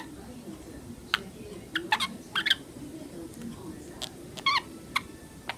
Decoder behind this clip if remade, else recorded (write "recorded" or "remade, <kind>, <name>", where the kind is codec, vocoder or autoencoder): recorded